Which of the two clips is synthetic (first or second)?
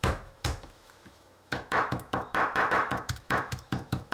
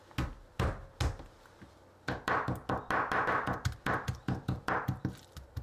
first